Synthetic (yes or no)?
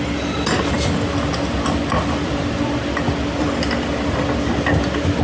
no